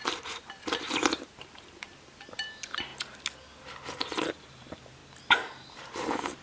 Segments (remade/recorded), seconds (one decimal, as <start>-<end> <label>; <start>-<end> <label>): 0.0-2.9 remade; 2.9-4.3 recorded; 4.3-5.0 remade; 5.0-5.7 recorded; 5.7-6.4 remade